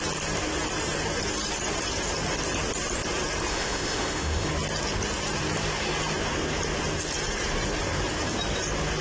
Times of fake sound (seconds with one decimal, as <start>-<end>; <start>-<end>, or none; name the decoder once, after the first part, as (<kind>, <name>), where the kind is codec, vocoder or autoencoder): 3.5-4.5 (autoencoder, DAC-VAE)